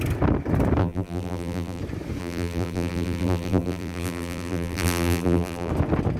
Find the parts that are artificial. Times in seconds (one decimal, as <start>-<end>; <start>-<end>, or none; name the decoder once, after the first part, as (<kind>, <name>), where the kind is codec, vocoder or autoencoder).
0.8-1.8 (vocoder, BigVGAN v2); 2.2-5.7